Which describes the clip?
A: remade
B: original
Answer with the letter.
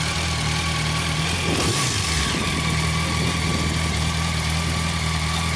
B